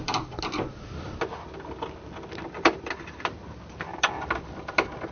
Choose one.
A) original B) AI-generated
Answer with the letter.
A